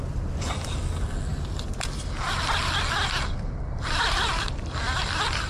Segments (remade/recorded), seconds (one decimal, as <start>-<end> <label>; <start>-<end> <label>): 0.0-4.0 recorded; 4.0-4.6 remade; 4.6-5.5 recorded